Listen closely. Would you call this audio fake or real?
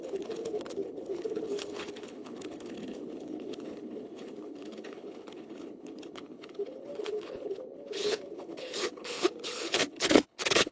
fake